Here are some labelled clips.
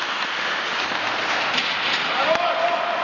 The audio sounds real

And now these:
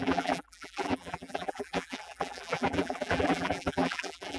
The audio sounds fake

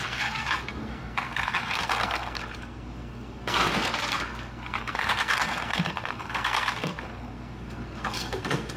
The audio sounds fake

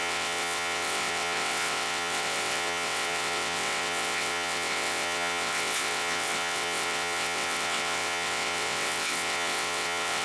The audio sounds fake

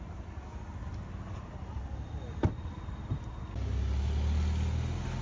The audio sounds real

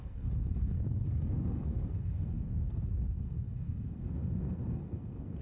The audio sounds fake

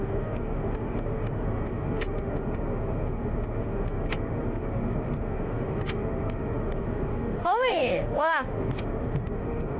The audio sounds fake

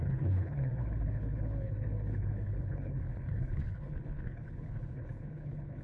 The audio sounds fake